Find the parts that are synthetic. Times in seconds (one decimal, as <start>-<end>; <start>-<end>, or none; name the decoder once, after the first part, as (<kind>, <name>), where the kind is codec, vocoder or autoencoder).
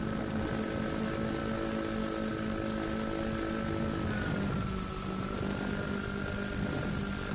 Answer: none